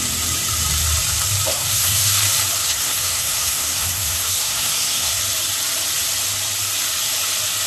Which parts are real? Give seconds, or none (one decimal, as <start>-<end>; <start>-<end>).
0.0-1.5; 2.2-2.6; 5.2-7.7

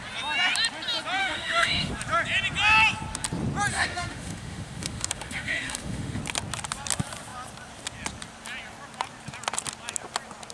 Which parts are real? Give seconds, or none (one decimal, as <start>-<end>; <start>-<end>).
0.0-1.2; 1.9-3.7; 6.2-10.5

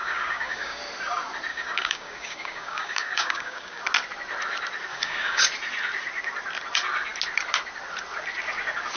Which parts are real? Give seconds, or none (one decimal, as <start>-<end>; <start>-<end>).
0.8-1.5; 3.8-4.9; 5.4-9.0

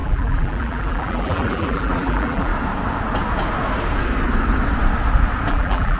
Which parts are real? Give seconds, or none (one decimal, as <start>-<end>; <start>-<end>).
2.5-5.5

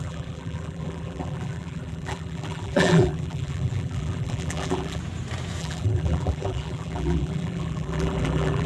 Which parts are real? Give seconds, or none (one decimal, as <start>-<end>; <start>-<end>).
5.0-5.6

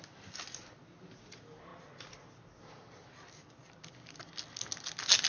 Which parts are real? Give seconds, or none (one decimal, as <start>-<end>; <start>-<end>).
0.0-5.3

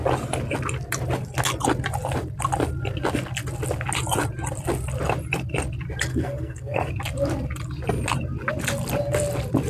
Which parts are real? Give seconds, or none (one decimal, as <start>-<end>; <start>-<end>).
0.0-6.1; 6.9-9.7